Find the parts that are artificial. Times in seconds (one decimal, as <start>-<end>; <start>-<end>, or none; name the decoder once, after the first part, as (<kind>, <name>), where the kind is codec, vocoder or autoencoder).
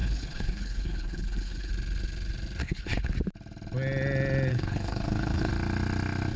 0.0-1.7 (codec, HILCodec); 2.6-3.1; 4.5-5.5